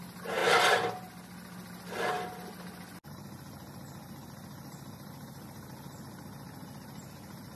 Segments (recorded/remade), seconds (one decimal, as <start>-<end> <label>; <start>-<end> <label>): 0.0-7.6 recorded